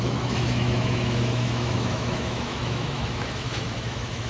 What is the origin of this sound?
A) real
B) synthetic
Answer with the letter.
B